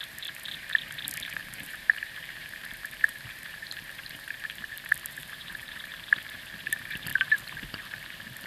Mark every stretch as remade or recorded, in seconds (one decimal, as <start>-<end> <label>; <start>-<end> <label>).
0.0-1.4 recorded; 1.4-4.5 remade; 4.5-5.2 recorded; 5.2-5.9 remade; 5.9-8.5 recorded